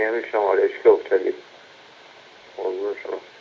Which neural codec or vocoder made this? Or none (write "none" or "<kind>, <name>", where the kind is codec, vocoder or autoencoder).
none